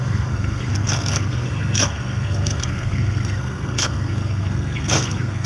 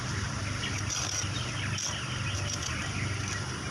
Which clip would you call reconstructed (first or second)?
first